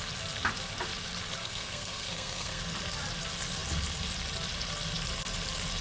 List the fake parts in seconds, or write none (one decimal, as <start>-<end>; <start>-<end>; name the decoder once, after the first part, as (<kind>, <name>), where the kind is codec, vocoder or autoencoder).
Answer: 1.4-2.6 (codec, SNAC)